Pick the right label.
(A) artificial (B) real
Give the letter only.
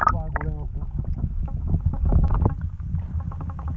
B